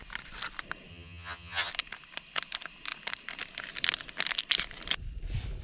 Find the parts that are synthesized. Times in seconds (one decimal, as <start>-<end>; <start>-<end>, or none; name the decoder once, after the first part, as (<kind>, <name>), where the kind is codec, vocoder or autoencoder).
0.9-1.7 (vocoder, HiFi-GAN)

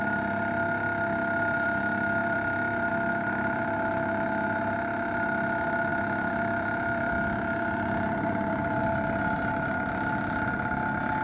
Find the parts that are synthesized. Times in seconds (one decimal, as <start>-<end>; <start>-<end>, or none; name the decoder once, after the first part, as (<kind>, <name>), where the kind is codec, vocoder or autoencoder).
1.2-1.8 (vocoder, BigVGAN v2); 2.2-2.9; 5.9-8.8

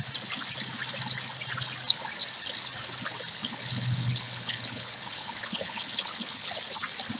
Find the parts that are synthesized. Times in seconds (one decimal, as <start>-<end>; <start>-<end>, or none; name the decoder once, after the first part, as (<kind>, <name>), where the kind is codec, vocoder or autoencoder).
3.4-6.6 (codec, HILCodec)

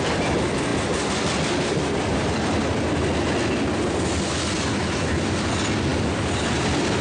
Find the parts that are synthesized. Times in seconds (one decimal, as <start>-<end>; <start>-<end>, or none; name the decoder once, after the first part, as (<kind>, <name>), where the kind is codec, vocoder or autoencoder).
none

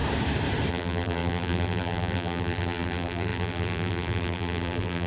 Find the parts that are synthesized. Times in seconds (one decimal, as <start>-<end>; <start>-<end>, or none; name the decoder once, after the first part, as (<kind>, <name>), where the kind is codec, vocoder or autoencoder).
0.7-5.1 (vocoder, BigVGAN v2)

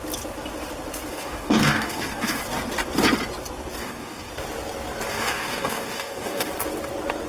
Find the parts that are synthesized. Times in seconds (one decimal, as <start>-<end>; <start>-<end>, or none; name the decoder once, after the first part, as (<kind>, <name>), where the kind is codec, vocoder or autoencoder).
1.1-2.4 (codec, DAC); 3.8-4.3; 5.1-6.5

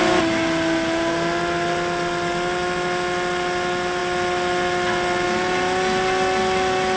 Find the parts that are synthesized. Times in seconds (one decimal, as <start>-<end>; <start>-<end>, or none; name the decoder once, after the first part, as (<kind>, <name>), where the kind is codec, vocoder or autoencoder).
none

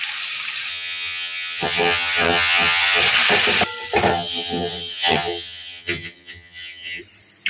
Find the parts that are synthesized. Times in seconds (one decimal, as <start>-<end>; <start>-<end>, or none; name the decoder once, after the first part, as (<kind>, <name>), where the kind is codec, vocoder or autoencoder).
0.7-3.0 (vocoder, HiFi-GAN); 4.1-7.0